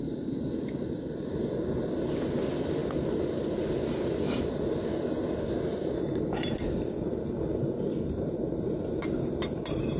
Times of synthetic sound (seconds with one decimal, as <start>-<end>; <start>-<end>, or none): none